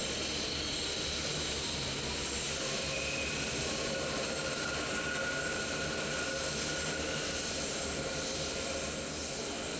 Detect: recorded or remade recorded